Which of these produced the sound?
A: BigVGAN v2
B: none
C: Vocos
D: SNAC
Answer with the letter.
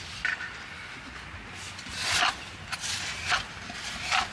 B